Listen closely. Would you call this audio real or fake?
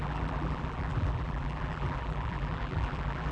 fake